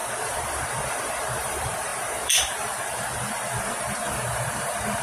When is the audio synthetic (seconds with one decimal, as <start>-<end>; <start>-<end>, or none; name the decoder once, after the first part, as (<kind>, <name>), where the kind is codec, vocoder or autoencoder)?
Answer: 0.0-5.0 (vocoder, BigVGAN v2)